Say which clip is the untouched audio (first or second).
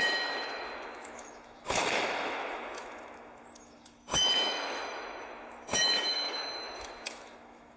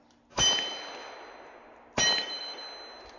second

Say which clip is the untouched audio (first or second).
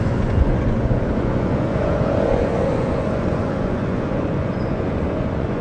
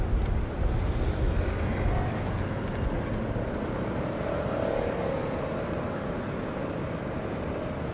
second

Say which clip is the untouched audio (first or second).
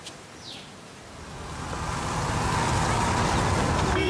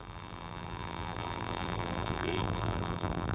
first